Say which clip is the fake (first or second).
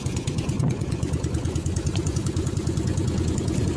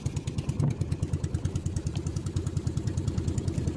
first